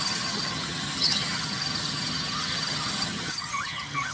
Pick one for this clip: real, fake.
fake